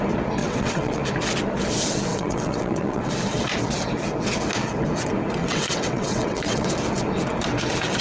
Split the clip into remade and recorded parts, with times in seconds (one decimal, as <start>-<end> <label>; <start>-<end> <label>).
0.0-0.4 recorded; 0.4-1.0 remade; 1.0-2.1 recorded; 2.1-3.1 remade; 3.1-5.4 recorded; 5.4-6.7 remade; 6.7-8.0 recorded